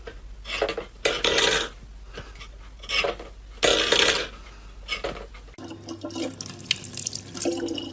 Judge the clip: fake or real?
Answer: real